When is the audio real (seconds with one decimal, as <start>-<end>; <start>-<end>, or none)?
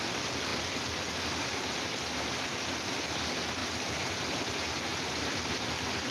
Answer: 0.0-3.6; 4.2-4.9; 5.5-6.1